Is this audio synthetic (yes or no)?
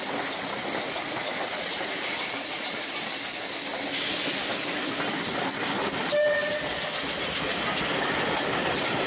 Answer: no